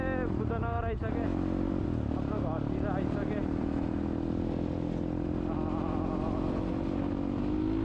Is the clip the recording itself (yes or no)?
yes